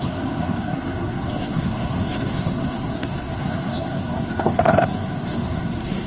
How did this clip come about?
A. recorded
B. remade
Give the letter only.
B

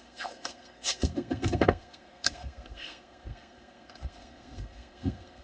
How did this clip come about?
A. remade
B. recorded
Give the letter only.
A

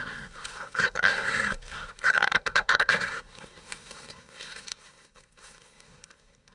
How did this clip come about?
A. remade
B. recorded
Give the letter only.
A